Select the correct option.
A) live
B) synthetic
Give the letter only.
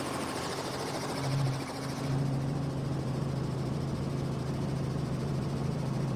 B